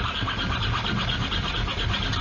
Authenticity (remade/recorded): recorded